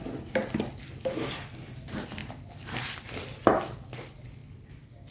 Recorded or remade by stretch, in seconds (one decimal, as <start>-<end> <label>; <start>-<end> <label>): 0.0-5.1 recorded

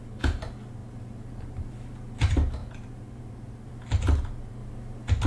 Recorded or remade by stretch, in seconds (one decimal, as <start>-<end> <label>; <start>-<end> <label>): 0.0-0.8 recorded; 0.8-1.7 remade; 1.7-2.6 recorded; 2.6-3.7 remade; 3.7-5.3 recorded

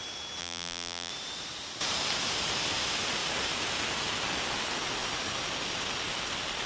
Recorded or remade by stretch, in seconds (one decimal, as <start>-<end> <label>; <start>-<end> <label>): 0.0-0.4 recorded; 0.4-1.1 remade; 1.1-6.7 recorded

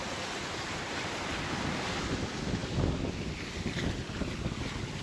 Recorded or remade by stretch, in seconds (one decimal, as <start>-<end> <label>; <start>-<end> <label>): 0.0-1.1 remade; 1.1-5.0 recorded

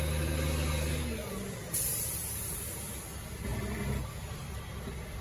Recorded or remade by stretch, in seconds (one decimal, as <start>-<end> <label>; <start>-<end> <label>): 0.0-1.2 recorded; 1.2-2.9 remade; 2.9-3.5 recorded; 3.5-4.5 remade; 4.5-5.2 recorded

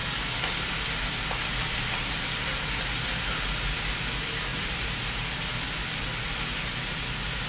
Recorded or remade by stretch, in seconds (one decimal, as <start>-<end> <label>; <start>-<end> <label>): 0.0-4.5 recorded; 4.5-5.1 remade; 5.1-7.5 recorded

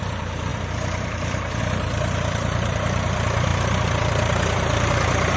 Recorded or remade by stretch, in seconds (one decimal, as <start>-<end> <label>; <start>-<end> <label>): 0.0-5.4 remade

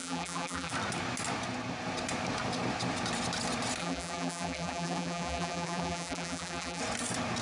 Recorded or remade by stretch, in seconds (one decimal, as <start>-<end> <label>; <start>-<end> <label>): 0.0-0.7 remade; 0.7-3.8 recorded; 3.8-6.8 remade; 6.8-7.4 recorded